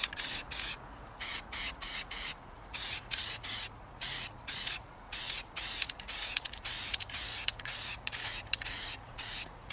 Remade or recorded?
remade